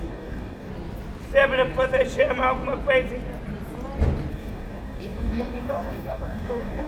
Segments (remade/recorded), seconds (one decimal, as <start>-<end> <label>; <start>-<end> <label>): 0.0-0.7 remade; 0.7-4.3 recorded; 4.3-6.9 remade